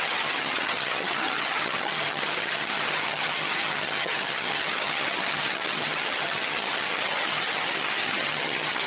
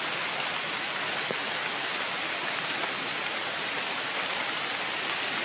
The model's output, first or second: first